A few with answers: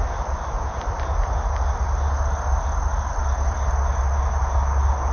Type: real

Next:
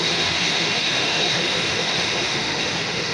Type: fake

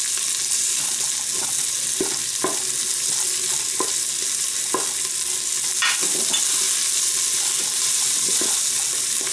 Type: real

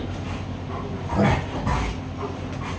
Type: real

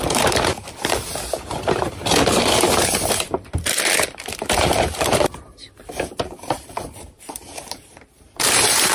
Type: fake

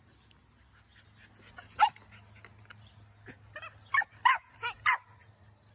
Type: real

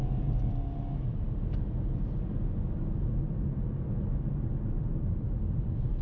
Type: real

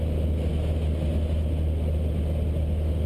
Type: real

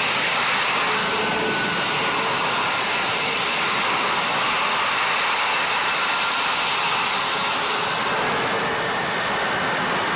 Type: real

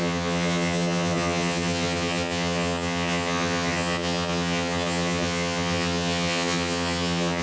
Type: fake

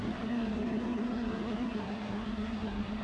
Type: fake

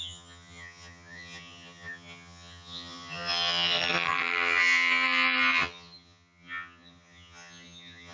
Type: fake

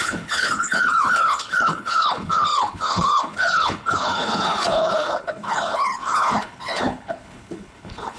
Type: fake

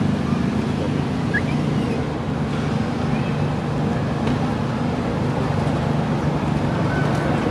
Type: real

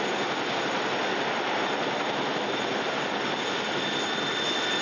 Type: real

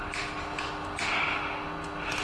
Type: real